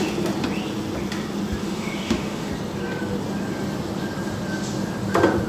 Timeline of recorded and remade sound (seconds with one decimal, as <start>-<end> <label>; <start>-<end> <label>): 0.0-1.6 recorded; 1.6-2.5 remade; 2.5-5.5 recorded